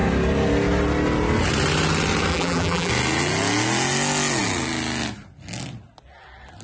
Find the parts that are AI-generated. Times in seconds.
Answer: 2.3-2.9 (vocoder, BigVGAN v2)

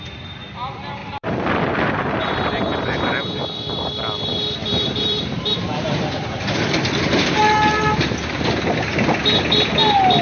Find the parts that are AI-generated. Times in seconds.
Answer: 1.0-3.4 (vocoder, BigVGAN v2); 4.7-7.4

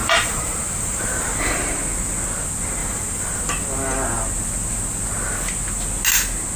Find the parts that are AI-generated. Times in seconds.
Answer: 0.0-1.8 (vocoder, BigVGAN v2); 2.8-3.4

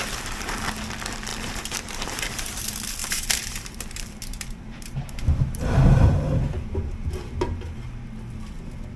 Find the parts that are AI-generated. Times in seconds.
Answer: 1.3-2.6 (vocoder, BigVGAN v2); 3.0-7.9

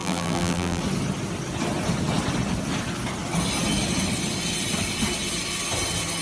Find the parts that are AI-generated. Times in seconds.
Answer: 0.0-0.8 (vocoder, BigVGAN v2)

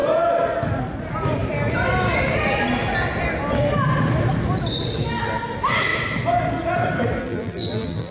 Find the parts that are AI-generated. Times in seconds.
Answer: 7.2-8.1 (vocoder, BigVGAN v2)